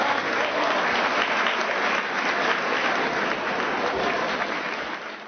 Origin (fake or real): real